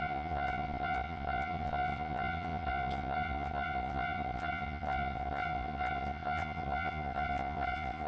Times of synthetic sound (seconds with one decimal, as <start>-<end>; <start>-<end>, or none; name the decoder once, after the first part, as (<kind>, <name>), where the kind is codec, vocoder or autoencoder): 0.0-8.1 (vocoder, Vocos)